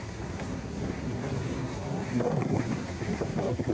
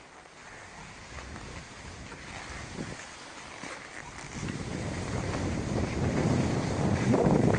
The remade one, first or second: first